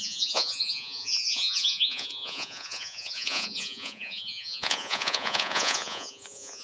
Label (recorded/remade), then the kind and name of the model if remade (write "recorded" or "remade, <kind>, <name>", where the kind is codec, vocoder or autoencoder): remade, vocoder, Vocos